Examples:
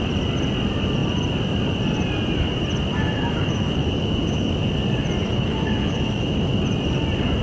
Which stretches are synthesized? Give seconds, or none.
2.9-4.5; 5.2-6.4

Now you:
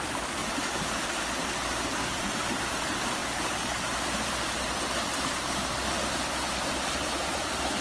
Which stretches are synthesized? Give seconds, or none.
0.0-0.4; 1.4-7.8